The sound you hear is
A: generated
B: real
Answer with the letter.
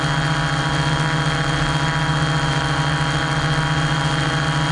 B